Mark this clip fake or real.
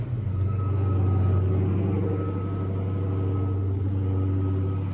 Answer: real